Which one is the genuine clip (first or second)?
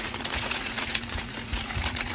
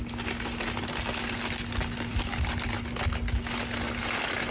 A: second